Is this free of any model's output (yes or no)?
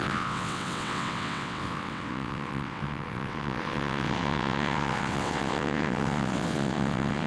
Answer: no